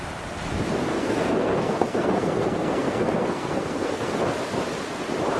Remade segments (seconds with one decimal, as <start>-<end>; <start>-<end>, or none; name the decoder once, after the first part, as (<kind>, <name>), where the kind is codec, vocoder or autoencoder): 0.9-4.1 (codec, SNAC)